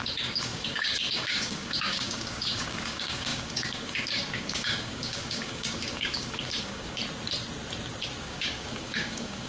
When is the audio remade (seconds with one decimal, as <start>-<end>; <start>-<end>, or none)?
0.0-7.0; 8.2-9.5